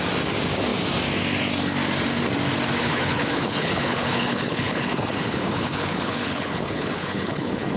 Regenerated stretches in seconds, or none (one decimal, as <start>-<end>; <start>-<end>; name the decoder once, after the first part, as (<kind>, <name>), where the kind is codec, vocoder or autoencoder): 2.8-7.8 (codec, HILCodec)